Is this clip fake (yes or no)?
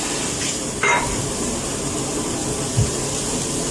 no